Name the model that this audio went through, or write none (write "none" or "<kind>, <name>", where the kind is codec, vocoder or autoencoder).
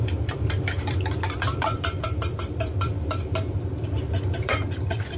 vocoder, BigVGAN v2